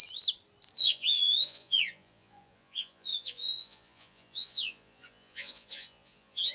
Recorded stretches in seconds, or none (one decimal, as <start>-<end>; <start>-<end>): 0.0-0.8